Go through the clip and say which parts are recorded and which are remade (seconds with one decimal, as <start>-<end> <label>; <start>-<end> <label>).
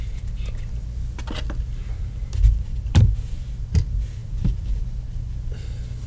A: 0.0-1.8 recorded; 1.8-3.5 remade; 3.5-4.2 recorded; 4.2-4.8 remade; 4.8-6.1 recorded